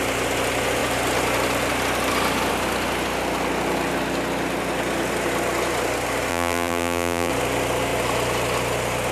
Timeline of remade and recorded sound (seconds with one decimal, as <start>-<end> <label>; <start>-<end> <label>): 0.0-6.3 recorded; 6.3-7.3 remade; 7.3-9.1 recorded